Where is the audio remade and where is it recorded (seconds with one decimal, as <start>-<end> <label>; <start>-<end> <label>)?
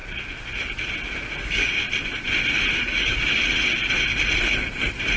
0.0-1.4 recorded; 1.4-1.8 remade; 1.8-2.8 recorded; 2.8-3.4 remade; 3.4-5.2 recorded